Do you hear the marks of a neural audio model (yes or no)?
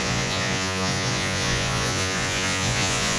yes